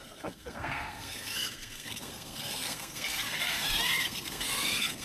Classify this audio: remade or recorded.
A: remade